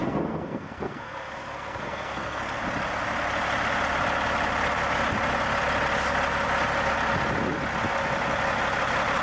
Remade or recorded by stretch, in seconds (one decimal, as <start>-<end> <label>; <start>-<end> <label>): 0.0-2.6 remade; 2.6-9.2 recorded